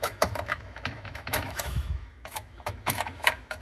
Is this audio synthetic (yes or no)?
yes